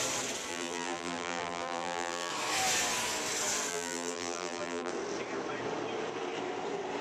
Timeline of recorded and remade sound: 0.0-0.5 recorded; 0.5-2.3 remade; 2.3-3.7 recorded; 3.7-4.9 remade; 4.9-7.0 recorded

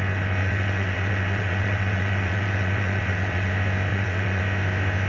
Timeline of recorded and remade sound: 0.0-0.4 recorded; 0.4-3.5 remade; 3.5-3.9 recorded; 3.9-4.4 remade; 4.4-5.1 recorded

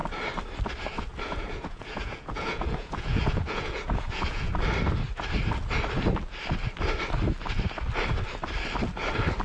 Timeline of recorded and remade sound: 0.0-1.1 recorded; 1.1-4.5 remade; 4.5-9.4 recorded